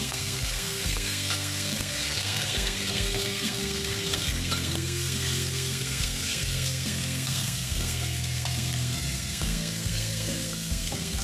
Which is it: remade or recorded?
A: remade